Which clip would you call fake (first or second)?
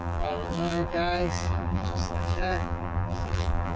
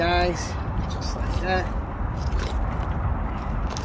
first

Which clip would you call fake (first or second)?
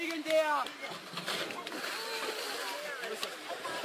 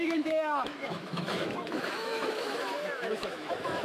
second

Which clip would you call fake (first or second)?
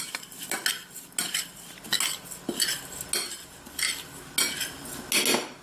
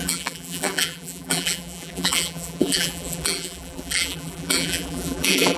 second